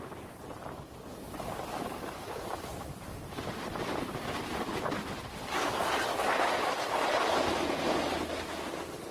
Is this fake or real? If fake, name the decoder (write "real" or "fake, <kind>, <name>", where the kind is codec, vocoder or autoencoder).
real